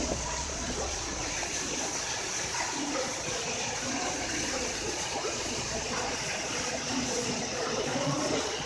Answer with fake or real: fake